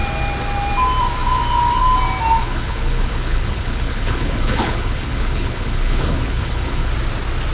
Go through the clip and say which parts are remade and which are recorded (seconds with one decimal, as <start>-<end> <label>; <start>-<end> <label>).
0.0-2.4 recorded; 2.4-6.9 remade; 6.9-7.5 recorded